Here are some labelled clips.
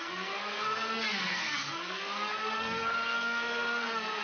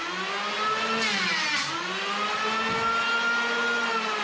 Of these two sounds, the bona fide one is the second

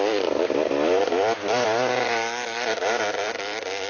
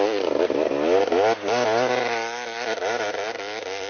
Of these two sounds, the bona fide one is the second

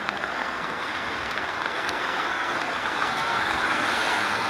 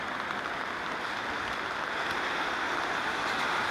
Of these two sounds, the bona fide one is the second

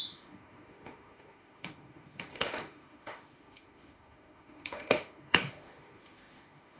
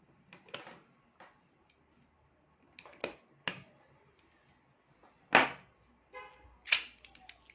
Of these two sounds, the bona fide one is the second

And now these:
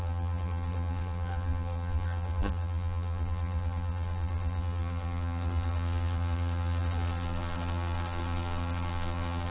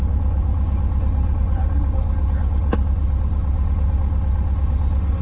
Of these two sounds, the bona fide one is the second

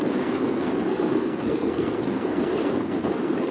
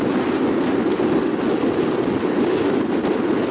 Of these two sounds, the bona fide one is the second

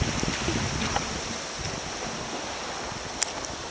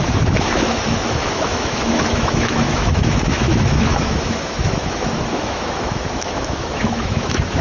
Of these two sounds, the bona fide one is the first